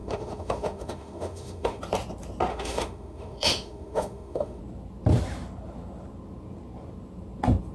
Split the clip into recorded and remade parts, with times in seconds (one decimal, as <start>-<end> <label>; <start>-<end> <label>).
0.0-1.8 remade; 1.8-2.5 recorded; 2.5-4.6 remade; 4.6-7.7 recorded